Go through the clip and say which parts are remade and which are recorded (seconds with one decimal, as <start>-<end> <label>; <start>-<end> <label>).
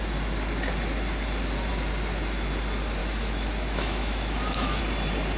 0.0-3.0 recorded; 3.0-4.8 remade; 4.8-5.4 recorded